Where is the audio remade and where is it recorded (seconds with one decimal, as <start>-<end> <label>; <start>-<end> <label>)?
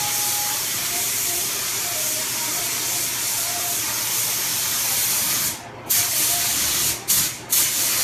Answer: 0.0-0.4 recorded; 0.4-2.6 remade; 2.6-3.3 recorded; 3.3-3.8 remade; 3.8-8.0 recorded